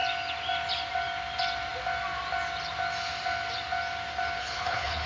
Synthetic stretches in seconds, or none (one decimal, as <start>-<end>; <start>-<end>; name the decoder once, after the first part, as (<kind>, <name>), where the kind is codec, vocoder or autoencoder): 4.4-5.1 (codec, HILCodec)